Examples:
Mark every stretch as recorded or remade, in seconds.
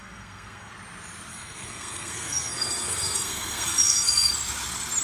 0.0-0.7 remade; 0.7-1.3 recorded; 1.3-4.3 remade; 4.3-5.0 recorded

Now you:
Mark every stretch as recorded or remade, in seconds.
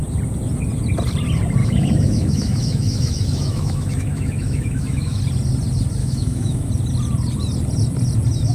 0.0-1.6 recorded; 1.6-5.2 remade; 5.2-6.0 recorded; 6.0-6.7 remade; 6.7-8.5 recorded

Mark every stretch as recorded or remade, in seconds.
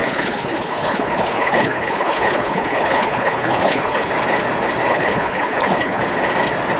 0.0-4.1 remade; 4.1-4.9 recorded; 4.9-6.0 remade; 6.0-6.8 recorded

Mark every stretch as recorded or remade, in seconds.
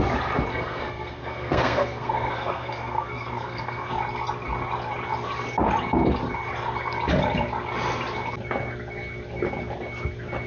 0.0-0.5 recorded; 0.5-3.9 remade; 3.9-10.5 recorded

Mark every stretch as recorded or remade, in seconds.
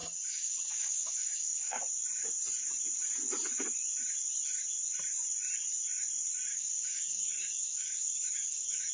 0.0-1.8 remade; 1.8-6.5 recorded; 6.5-8.9 remade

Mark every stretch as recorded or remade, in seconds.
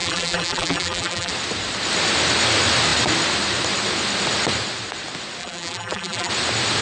0.0-1.3 remade; 1.3-5.4 recorded; 5.4-6.3 remade; 6.3-6.8 recorded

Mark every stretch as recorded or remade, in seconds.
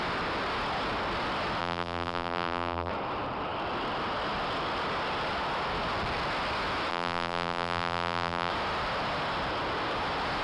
0.0-1.6 recorded; 1.6-2.9 remade; 2.9-6.9 recorded; 6.9-8.5 remade; 8.5-10.4 recorded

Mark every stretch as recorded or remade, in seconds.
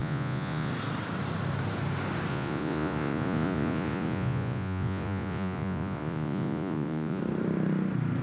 0.0-0.7 remade; 0.7-2.3 recorded; 2.3-7.2 remade; 7.2-8.2 recorded